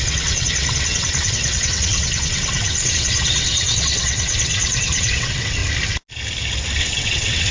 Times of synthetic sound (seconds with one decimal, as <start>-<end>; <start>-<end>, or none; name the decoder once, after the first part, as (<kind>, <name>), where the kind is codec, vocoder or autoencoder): 0.0-5.6 (vocoder, WaveNeXt); 6.8-7.5